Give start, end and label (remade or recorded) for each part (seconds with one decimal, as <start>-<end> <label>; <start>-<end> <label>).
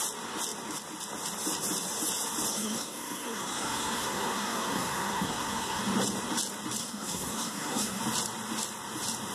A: 0.0-2.5 recorded; 2.5-5.8 remade; 5.8-6.8 recorded; 6.8-8.0 remade; 8.0-9.3 recorded